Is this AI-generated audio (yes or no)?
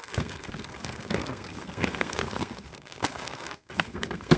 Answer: yes